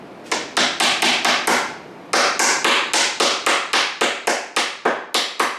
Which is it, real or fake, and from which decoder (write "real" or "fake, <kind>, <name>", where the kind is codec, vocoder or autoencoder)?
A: real